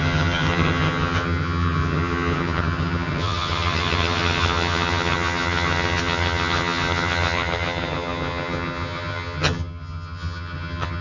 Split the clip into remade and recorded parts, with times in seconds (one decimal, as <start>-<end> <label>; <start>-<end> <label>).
0.0-11.0 remade